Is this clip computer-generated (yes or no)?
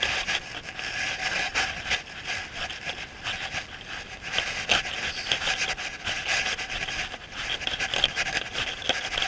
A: no